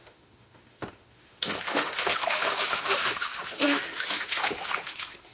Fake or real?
fake